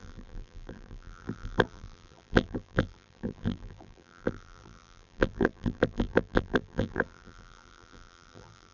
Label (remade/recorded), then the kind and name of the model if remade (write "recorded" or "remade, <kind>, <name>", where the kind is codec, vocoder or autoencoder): remade, vocoder, BigVGAN v2